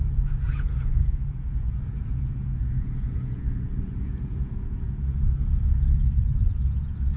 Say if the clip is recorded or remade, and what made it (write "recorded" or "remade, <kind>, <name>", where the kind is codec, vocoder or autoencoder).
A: remade, vocoder, Vocos